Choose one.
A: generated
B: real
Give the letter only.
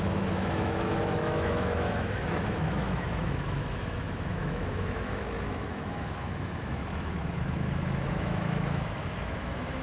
A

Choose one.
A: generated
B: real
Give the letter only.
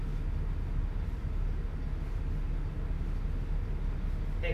B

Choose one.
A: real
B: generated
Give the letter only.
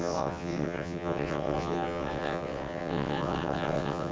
B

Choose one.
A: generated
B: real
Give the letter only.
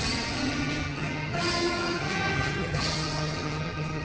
A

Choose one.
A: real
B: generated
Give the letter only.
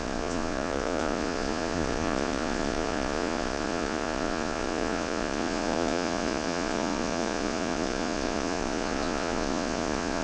B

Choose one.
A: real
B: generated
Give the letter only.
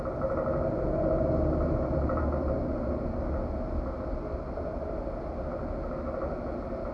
A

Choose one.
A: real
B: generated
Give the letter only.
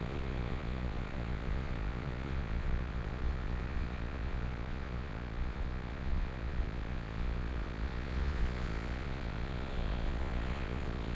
B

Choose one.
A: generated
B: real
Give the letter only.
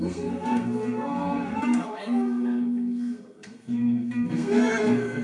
A